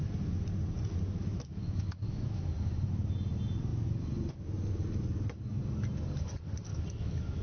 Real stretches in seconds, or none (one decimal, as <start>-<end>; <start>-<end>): 0.0-1.3; 2.4-6.7